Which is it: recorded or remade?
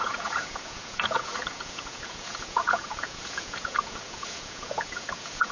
remade